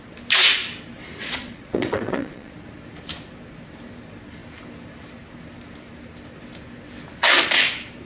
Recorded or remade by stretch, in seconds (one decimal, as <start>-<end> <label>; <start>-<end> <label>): 0.0-1.2 recorded; 1.2-2.5 remade; 2.5-8.1 recorded